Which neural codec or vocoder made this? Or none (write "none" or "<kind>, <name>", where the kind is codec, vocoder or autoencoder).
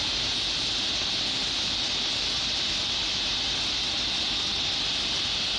none